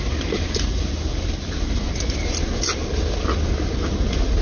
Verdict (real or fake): real